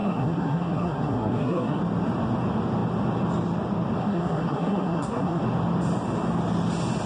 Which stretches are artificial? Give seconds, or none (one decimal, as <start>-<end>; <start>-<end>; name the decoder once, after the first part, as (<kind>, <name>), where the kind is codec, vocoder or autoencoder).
0.0-1.8 (codec, SNAC); 4.0-5.4